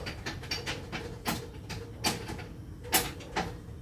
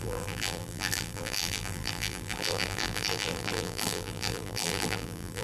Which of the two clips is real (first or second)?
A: first